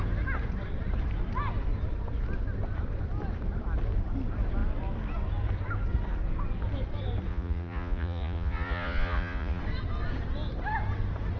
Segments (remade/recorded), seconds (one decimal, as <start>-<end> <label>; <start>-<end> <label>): 0.0-7.3 recorded; 7.3-9.6 remade; 9.6-11.4 recorded